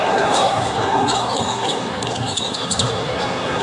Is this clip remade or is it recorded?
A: remade